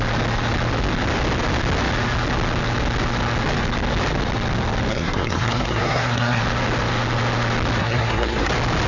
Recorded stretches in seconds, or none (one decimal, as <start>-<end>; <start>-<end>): 0.0-4.9; 6.4-7.8; 8.5-8.9